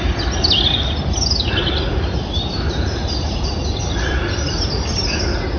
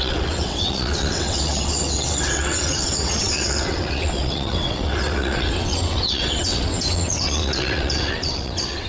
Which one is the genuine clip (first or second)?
first